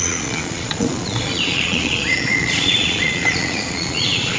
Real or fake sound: fake